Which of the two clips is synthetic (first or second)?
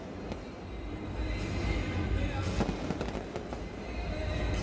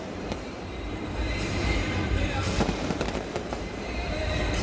second